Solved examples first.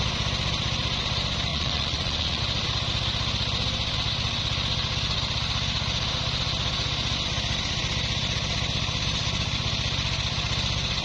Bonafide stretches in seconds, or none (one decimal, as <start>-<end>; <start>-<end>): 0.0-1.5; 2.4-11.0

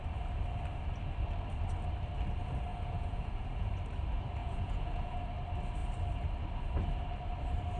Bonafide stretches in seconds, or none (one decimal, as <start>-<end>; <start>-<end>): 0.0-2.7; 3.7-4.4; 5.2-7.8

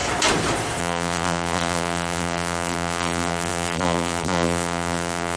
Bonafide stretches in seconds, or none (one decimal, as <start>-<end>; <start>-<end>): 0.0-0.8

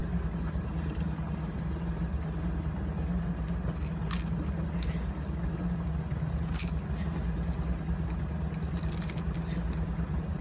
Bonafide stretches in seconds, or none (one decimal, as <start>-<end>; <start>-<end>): 0.0-10.4

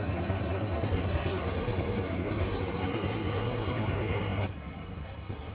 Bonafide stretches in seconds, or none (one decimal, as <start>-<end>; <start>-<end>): none